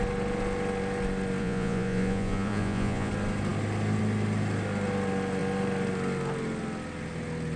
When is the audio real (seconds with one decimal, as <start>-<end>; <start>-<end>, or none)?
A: 0.0-1.4; 3.1-7.6